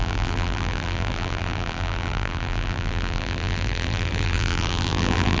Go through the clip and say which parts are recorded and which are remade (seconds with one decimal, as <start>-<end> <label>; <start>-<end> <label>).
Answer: 0.0-5.4 remade